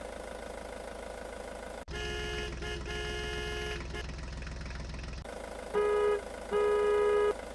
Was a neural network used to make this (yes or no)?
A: no